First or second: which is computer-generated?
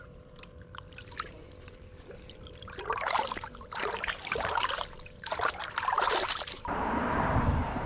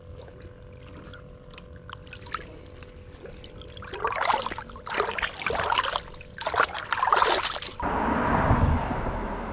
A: first